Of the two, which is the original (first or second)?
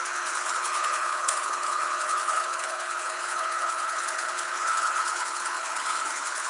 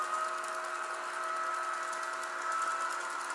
second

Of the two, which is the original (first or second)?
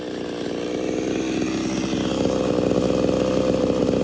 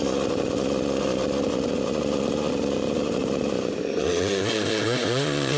first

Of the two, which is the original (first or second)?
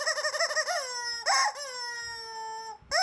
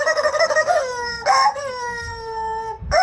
first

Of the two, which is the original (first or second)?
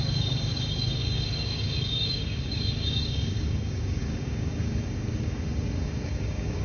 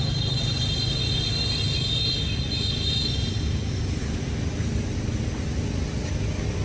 second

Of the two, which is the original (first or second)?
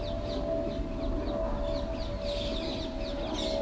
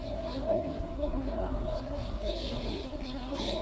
first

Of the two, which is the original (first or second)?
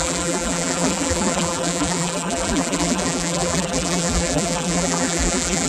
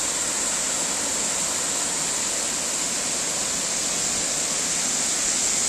second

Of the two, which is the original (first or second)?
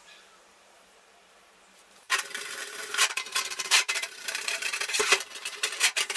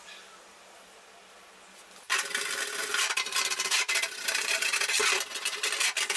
second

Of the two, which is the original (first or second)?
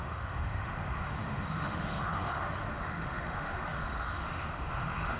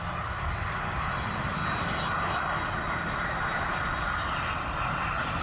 second